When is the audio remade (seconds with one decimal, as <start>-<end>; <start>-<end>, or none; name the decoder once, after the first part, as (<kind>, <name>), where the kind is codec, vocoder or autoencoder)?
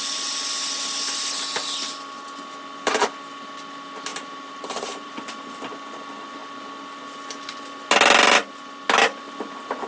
4.1-5.1 (vocoder, BigVGAN v2)